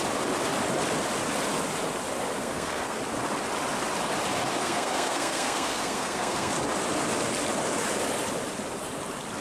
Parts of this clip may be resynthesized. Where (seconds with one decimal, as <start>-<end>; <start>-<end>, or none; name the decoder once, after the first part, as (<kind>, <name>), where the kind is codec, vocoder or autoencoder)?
2.4-3.0 (codec, SNAC); 4.6-6.5